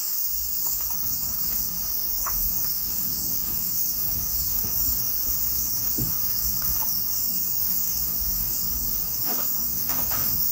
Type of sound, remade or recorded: remade